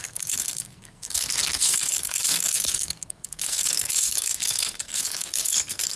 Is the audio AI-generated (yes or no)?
yes